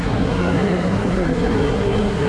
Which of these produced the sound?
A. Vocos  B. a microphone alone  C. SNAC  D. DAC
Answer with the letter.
C